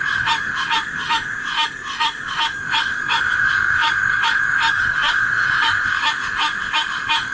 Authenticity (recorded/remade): remade